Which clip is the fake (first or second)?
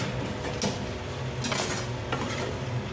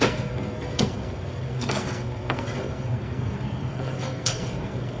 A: second